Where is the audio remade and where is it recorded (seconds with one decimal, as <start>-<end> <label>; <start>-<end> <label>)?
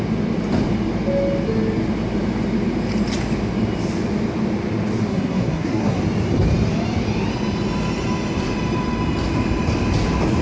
0.0-5.1 recorded; 5.1-6.0 remade; 6.0-10.4 recorded